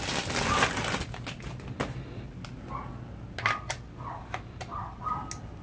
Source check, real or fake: real